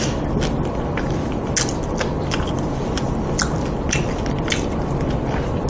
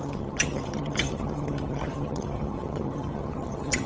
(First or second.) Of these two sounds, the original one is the first